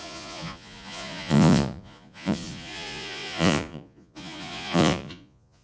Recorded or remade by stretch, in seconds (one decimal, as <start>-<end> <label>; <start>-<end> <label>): 0.0-5.6 remade